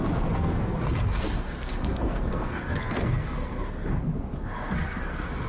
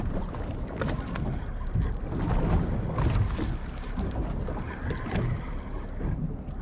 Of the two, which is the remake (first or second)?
first